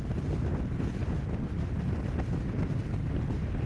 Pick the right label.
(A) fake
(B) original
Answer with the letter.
B